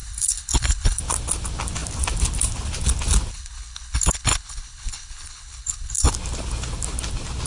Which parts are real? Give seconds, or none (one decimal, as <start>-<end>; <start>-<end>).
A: 1.0-3.3; 6.1-7.5